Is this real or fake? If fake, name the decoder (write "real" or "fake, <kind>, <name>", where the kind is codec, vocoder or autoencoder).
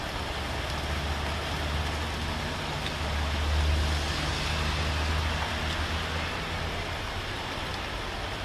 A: real